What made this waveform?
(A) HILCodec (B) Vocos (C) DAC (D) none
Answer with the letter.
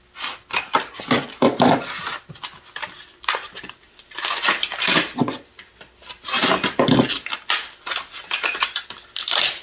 D